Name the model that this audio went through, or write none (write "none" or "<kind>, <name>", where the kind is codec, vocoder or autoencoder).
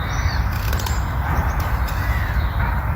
none